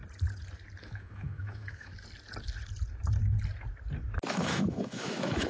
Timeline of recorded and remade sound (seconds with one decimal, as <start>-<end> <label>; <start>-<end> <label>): 0.0-0.8 recorded; 0.8-1.9 remade; 1.9-4.3 recorded; 4.3-5.5 remade